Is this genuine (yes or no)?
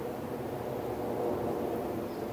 yes